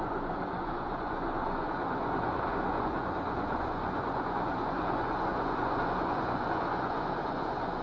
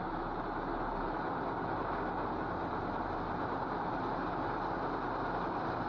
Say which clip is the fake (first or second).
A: first